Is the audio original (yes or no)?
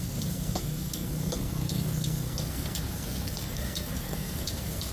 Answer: no